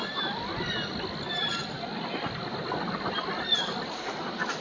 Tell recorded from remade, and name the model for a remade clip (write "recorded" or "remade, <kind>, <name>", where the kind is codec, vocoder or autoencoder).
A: recorded